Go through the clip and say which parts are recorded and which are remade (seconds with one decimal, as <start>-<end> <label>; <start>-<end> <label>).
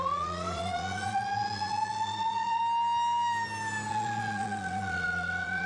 0.0-2.6 remade; 2.6-3.9 recorded; 3.9-5.7 remade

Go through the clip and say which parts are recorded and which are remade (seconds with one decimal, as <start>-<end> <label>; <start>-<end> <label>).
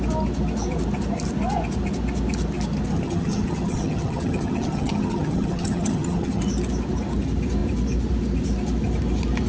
0.0-2.9 recorded; 2.9-6.4 remade; 6.4-9.5 recorded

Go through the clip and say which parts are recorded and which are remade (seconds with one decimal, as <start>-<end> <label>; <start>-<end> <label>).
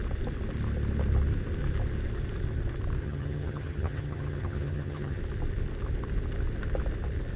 0.0-3.0 recorded; 3.0-5.2 remade; 5.2-7.4 recorded